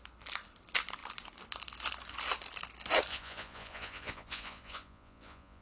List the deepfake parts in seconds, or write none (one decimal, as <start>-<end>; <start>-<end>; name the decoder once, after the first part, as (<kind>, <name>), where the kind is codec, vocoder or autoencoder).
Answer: 3.1-5.6 (vocoder, Vocos)